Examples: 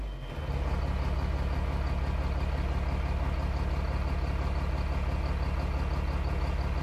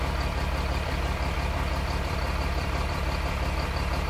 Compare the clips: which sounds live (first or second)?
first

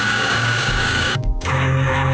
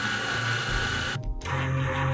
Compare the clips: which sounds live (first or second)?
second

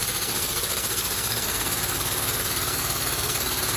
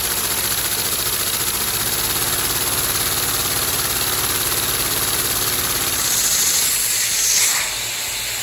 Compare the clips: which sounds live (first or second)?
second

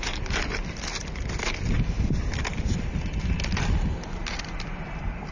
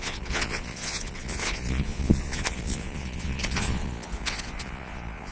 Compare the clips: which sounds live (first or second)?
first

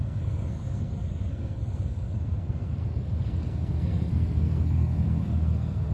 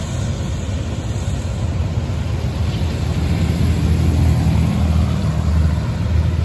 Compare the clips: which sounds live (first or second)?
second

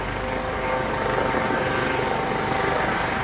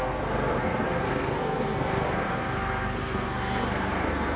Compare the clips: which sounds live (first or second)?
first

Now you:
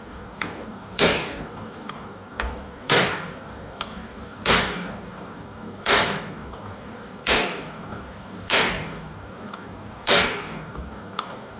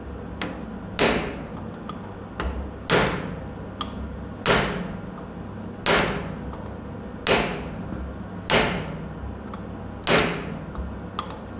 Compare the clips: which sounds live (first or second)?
second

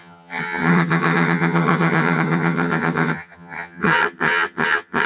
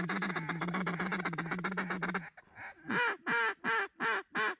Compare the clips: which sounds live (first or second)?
second